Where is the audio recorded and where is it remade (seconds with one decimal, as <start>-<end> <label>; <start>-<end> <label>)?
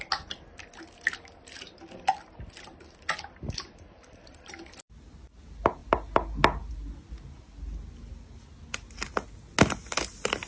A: 0.0-10.5 recorded